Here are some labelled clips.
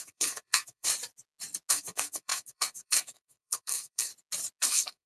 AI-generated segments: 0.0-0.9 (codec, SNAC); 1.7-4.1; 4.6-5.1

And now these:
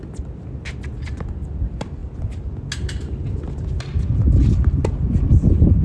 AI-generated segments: none

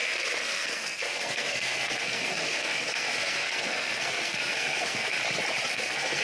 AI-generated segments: 0.0-5.2 (codec, SNAC); 5.7-6.2

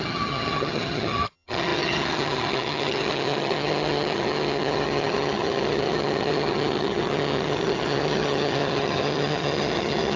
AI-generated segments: 0.0-10.2 (vocoder, HiFi-GAN)

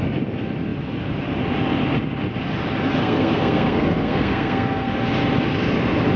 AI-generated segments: 3.0-5.0 (codec, SNAC)

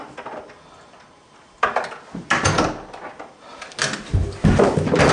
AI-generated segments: none

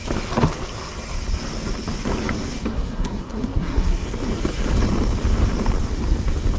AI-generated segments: 2.7-4.1 (codec, SNAC)

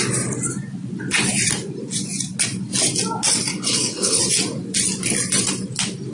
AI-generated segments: 3.5-4.2 (codec, HILCodec)